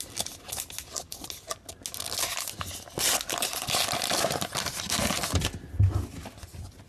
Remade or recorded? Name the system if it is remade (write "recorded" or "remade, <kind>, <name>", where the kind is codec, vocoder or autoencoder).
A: recorded